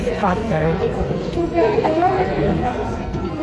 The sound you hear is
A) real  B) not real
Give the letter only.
B